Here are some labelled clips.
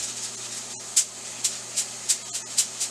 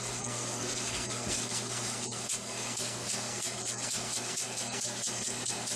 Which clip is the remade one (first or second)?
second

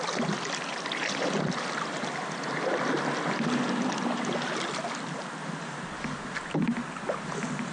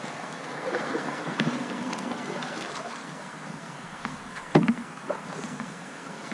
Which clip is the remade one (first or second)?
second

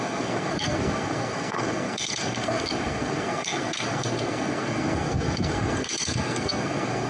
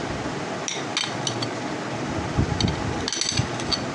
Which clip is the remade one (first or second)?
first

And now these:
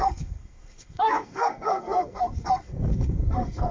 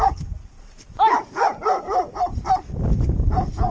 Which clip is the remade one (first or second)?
first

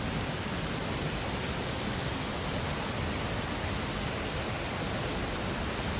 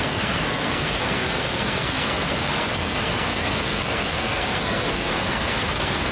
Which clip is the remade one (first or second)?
second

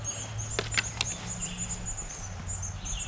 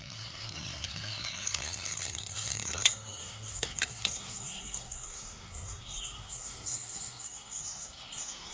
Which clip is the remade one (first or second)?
second